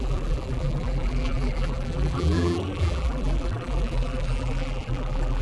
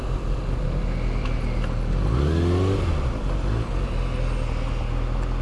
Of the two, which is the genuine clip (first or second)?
second